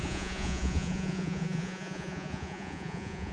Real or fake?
fake